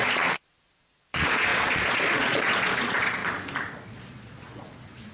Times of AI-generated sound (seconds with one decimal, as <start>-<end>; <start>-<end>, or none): 0.0-3.2; 3.9-5.1